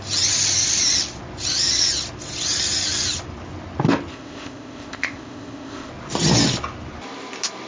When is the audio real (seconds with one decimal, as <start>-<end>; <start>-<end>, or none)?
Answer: 0.0-4.1; 5.9-7.7